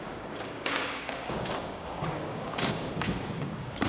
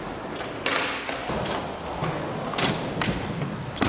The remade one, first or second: first